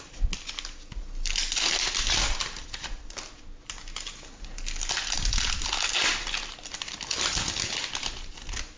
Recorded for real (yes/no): yes